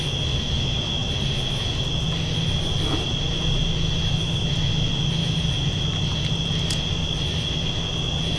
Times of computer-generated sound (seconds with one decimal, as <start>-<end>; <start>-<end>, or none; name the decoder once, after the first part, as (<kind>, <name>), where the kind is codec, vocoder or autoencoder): none